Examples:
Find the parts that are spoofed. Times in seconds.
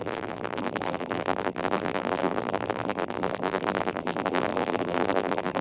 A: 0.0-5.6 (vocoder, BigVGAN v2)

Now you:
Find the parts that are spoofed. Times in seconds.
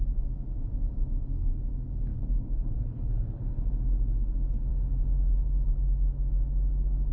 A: 2.1-3.7 (codec, HILCodec)